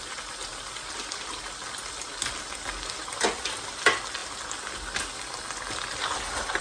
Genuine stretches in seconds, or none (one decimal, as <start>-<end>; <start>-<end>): 0.0-6.6